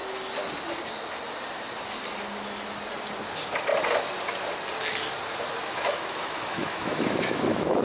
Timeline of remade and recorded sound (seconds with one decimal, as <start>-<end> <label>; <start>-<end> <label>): 0.0-5.6 recorded; 5.6-7.8 remade